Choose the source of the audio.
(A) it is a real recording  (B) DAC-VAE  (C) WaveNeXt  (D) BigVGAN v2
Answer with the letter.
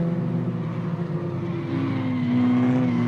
A